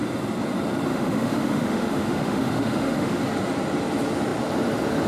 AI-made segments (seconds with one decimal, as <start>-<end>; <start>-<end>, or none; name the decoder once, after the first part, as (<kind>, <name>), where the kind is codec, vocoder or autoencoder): 0.9-3.2 (autoencoder, DAC-VAE)